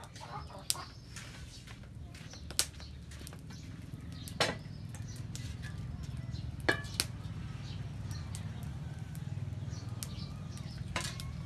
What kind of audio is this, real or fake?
real